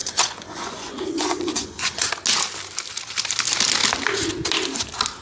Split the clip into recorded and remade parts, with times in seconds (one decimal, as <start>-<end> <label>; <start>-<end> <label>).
0.0-2.1 remade; 2.1-5.2 recorded